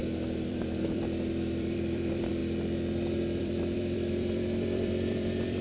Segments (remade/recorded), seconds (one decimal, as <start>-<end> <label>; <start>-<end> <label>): 0.0-0.5 recorded; 0.5-2.4 remade; 2.4-3.4 recorded; 3.4-5.6 remade